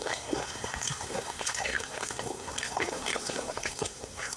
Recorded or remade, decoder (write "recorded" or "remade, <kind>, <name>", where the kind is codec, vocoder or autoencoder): remade, codec, SNAC